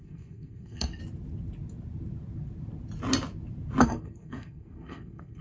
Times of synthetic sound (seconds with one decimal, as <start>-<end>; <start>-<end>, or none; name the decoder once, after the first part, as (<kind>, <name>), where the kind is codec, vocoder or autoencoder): 0.0-1.0 (codec, SNAC); 3.8-5.4